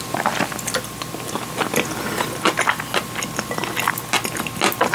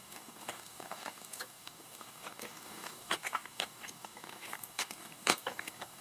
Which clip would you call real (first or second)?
first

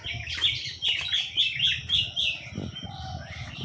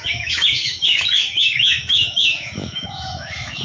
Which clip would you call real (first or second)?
first